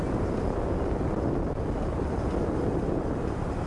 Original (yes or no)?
yes